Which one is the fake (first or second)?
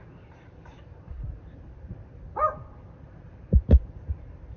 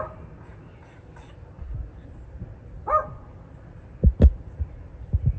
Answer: first